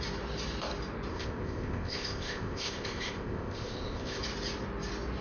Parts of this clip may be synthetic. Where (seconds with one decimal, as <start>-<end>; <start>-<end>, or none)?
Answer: 1.1-4.2